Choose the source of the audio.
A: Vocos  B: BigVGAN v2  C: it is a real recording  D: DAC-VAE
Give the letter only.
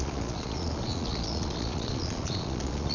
A